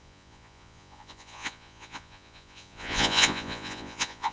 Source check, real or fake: fake